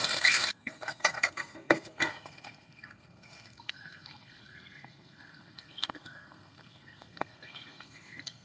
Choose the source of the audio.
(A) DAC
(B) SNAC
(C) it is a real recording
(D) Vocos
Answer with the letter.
B